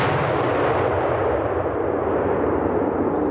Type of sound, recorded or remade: recorded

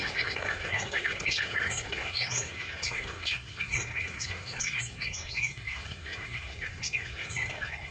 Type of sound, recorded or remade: remade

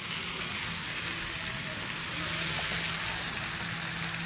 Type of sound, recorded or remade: recorded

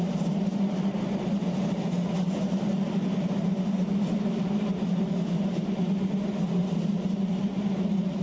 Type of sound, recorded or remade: recorded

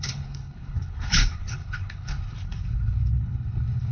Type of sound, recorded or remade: remade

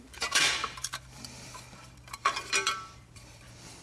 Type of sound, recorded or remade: remade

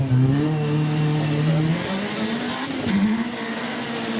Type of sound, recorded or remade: recorded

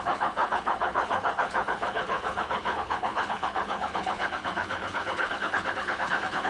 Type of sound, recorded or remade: remade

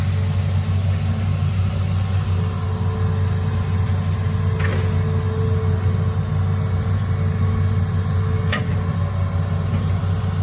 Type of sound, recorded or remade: recorded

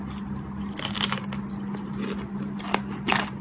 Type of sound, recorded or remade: recorded